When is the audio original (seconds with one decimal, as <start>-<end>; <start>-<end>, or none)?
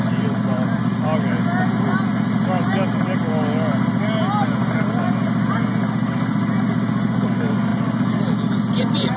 0.0-9.2